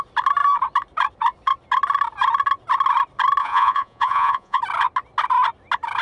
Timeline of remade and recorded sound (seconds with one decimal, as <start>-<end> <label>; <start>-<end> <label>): 0.0-3.4 recorded; 3.4-4.6 remade; 4.6-6.0 recorded